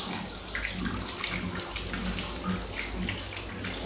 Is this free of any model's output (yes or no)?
yes